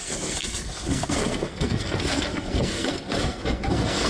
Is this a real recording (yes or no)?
no